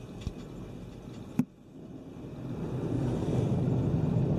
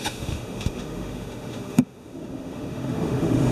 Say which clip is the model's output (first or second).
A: second